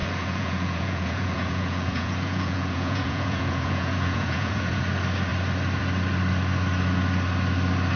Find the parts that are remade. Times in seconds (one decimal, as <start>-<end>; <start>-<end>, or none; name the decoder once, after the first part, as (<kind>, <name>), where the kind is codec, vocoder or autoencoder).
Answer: 0.0-4.8 (vocoder, Vocos)